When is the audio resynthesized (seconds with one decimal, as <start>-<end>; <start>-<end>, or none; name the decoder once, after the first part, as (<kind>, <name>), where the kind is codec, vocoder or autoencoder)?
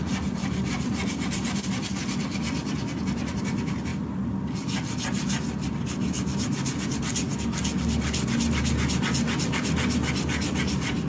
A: none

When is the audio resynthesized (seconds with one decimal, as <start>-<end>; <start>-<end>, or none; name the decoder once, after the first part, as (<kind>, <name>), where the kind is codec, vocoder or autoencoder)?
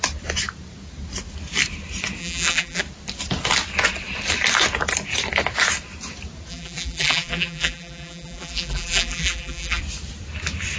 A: 2.2-2.8 (vocoder, BigVGAN v2); 6.5-9.8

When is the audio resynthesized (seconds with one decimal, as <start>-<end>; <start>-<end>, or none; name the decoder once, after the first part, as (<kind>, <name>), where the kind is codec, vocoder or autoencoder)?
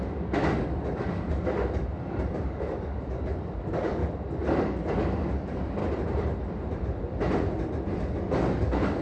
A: 0.0-4.0 (codec, DAC); 4.6-5.8; 7.9-9.0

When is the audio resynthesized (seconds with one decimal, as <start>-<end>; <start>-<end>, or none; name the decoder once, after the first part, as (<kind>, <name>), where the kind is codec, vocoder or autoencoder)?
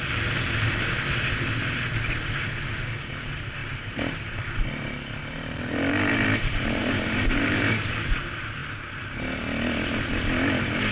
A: 3.6-4.2 (vocoder, BigVGAN v2); 5.2-7.9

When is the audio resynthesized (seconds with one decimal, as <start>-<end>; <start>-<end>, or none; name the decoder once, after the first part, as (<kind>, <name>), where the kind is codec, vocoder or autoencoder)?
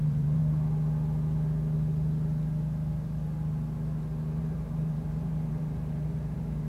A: 0.0-0.4 (vocoder, BigVGAN v2); 4.4-6.7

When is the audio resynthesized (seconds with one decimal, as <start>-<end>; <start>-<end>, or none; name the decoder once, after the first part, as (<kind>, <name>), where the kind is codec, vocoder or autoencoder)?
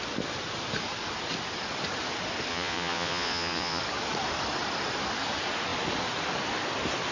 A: 2.5-3.8 (vocoder, Vocos)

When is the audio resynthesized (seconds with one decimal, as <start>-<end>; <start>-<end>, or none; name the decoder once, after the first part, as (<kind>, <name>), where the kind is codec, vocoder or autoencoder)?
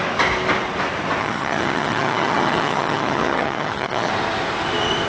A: 1.2-4.1 (vocoder, HiFi-GAN)